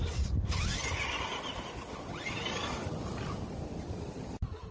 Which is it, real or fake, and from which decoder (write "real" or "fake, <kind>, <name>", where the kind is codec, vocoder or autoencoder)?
real